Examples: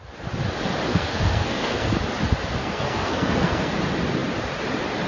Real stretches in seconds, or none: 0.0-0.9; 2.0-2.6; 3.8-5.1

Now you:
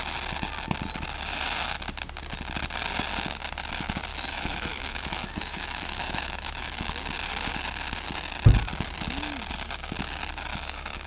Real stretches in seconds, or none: 0.0-4.1; 6.9-10.5

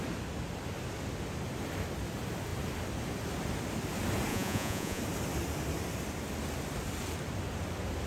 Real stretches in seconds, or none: 0.0-4.3; 5.0-8.1